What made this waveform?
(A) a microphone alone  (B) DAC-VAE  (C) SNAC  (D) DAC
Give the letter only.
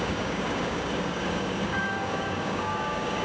D